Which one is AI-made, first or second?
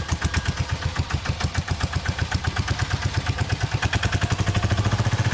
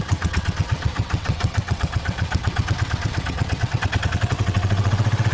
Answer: second